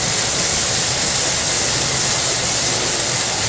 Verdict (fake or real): real